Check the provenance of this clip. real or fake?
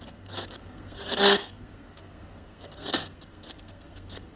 fake